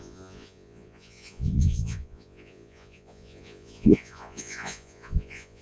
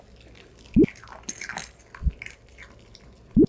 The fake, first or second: first